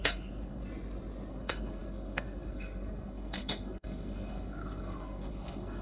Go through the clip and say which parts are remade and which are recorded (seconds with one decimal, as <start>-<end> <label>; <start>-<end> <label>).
0.0-0.6 remade; 0.6-1.3 recorded; 1.3-5.8 remade